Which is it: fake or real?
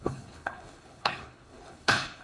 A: fake